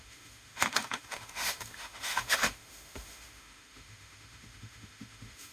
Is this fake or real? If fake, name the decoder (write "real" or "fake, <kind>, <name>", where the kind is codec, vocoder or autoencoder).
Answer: fake, autoencoder, DAC-VAE